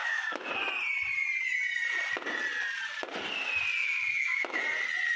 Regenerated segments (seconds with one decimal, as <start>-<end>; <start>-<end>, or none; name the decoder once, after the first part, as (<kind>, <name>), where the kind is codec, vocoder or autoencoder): 0.0-0.5 (autoencoder, DAC-VAE); 3.8-4.6